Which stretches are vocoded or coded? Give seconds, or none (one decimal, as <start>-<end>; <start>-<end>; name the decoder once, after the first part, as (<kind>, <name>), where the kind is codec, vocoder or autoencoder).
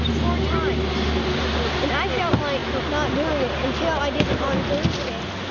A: none